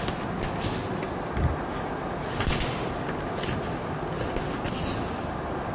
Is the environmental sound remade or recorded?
recorded